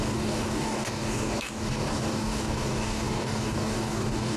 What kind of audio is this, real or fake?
fake